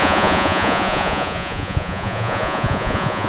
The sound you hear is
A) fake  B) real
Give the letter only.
A